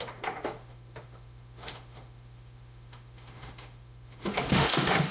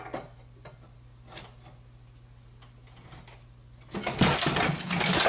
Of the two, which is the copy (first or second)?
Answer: first